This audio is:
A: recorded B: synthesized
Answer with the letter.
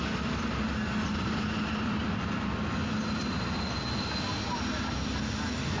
A